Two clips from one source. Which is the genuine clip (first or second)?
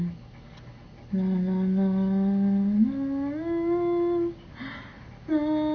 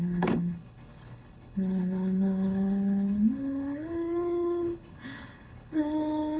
first